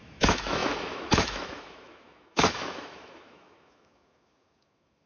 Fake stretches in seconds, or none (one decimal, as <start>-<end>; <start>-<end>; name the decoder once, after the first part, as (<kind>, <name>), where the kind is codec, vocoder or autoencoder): 0.0-5.1 (autoencoder, DAC-VAE)